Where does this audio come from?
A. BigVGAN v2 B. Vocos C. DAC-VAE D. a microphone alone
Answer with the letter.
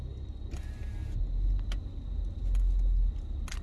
D